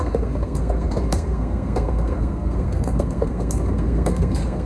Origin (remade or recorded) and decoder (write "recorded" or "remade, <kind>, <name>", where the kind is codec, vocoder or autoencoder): remade, codec, SNAC